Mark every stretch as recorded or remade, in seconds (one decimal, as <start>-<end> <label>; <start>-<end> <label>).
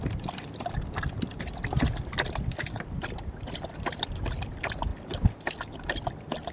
0.0-6.5 recorded